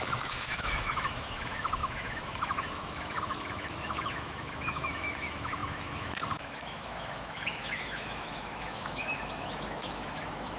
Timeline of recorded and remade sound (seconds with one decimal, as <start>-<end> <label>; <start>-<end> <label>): 0.0-10.6 remade